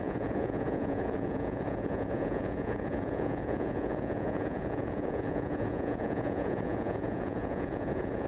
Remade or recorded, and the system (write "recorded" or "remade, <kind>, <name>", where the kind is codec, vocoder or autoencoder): remade, vocoder, Vocos